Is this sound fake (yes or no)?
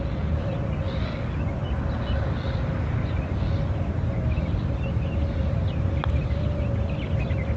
no